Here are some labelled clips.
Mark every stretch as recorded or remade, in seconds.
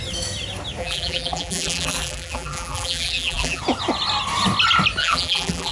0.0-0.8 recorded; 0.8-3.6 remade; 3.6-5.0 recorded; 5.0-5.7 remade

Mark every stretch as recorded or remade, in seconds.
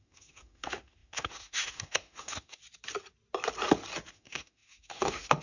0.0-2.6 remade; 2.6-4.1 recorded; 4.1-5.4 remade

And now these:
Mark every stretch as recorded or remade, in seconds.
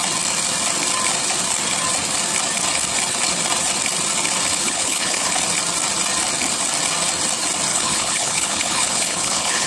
0.0-4.5 recorded; 4.5-5.3 remade; 5.3-7.7 recorded; 7.7-9.7 remade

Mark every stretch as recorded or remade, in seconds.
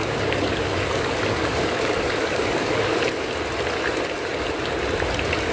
0.0-3.3 remade; 3.3-5.5 recorded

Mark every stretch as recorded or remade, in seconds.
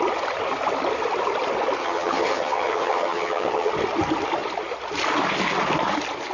0.0-1.8 recorded; 1.8-3.7 remade; 3.7-6.3 recorded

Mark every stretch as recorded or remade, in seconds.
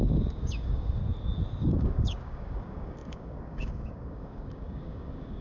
0.0-1.0 remade; 1.0-1.6 recorded; 1.6-5.4 remade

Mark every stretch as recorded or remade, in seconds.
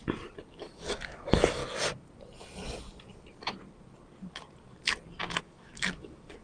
0.0-0.5 recorded; 0.5-1.6 remade; 1.6-5.4 recorded; 5.4-6.4 remade